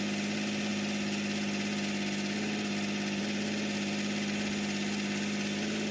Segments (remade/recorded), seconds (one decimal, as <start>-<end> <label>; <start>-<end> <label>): 0.0-5.9 recorded